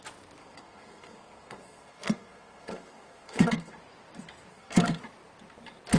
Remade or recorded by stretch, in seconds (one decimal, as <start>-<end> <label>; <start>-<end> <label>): 0.0-0.4 recorded; 0.4-3.7 remade; 3.7-4.5 recorded; 4.5-5.0 remade; 5.0-6.0 recorded

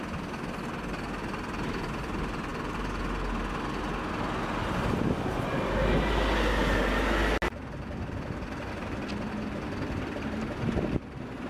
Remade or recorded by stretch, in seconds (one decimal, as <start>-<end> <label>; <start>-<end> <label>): 0.0-11.5 recorded

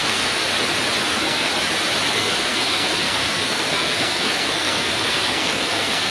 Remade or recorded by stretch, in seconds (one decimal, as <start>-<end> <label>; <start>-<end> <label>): 0.0-0.5 remade; 0.5-1.1 recorded; 1.1-1.5 remade; 1.5-2.1 recorded; 2.1-6.1 remade